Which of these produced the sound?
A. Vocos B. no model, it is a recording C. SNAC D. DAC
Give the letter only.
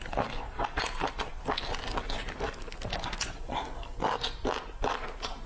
B